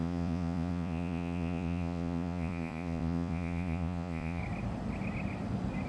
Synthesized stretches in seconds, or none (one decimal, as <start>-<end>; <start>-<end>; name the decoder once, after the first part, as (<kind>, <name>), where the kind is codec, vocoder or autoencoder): 0.0-4.4 (vocoder, Vocos)

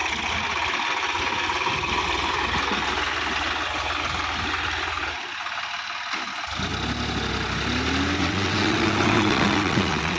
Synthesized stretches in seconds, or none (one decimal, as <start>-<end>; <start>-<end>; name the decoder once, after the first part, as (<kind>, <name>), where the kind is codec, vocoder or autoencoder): 8.2-10.2 (vocoder, WaveNeXt)

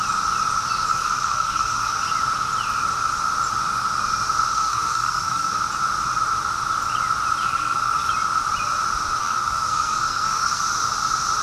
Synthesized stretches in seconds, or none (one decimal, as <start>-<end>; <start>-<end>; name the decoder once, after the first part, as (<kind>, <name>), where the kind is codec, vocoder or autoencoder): 0.9-2.0 (codec, SNAC); 4.5-5.6; 7.4-8.1; 9.2-10.6

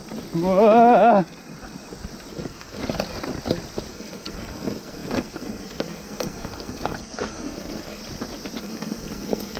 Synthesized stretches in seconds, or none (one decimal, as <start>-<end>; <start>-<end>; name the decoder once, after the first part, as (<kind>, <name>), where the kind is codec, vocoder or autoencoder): 2.3-2.8 (codec, SNAC); 3.9-8.0; 8.6-9.6

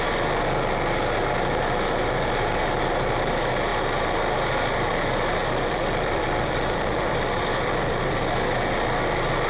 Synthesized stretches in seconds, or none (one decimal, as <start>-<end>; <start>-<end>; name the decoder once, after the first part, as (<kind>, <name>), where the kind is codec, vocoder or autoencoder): 5.4-8.2 (vocoder, BigVGAN v2)